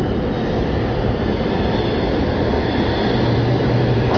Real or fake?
real